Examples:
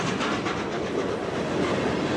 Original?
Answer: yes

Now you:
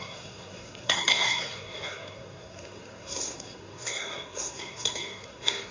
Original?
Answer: no